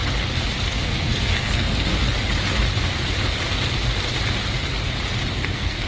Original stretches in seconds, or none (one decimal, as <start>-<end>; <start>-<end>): 0.0-0.7; 1.9-5.3